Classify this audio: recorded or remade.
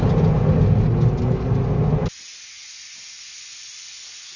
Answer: recorded